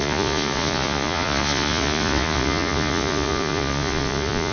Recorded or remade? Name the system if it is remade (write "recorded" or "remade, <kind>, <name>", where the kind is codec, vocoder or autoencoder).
remade, vocoder, Vocos